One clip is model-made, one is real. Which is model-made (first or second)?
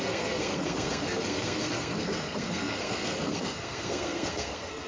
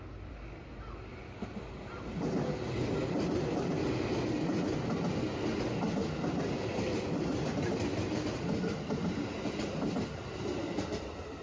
first